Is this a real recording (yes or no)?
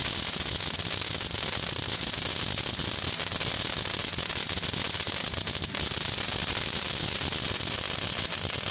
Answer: yes